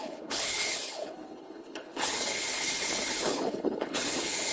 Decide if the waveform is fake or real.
fake